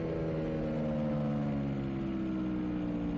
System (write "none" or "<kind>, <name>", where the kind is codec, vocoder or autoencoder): none